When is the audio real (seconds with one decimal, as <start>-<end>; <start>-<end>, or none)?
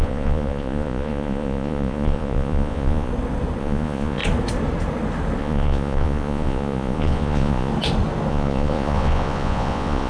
3.1-3.6; 4.2-5.4; 7.7-8.3